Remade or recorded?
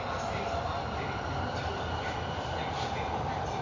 recorded